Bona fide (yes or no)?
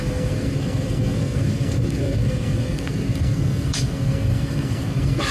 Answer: no